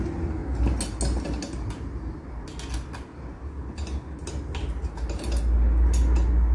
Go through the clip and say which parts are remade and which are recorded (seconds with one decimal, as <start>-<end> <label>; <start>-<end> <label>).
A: 0.0-6.5 recorded